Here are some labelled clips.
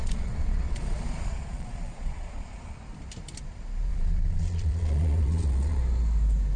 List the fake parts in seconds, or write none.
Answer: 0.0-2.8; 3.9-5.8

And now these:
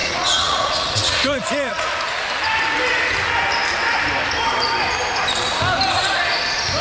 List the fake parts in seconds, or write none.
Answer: 0.0-1.9

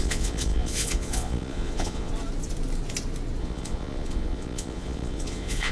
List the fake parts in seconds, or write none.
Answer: 0.0-2.1; 3.4-5.7

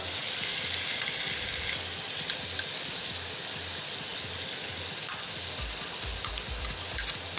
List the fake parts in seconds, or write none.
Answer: none

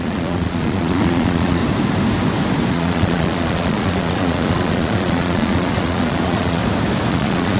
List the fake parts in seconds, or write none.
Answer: 0.0-1.6; 2.7-6.6; 7.1-7.6

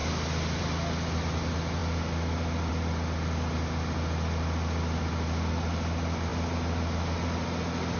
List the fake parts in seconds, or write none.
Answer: none

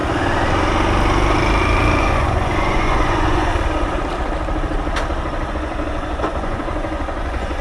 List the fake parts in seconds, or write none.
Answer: 2.0-3.5; 5.5-7.6

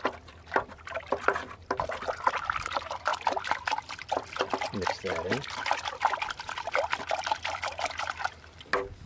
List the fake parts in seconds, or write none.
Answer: none